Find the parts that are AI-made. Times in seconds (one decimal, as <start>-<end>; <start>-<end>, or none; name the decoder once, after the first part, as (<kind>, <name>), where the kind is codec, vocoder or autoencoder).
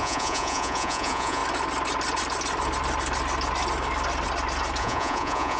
0.0-1.4 (vocoder, Vocos); 4.8-5.6